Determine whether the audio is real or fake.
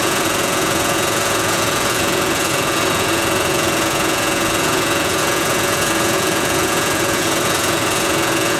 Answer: fake